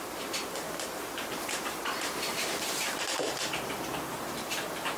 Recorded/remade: remade